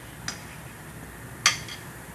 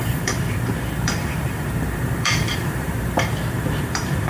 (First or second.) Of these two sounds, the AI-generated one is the second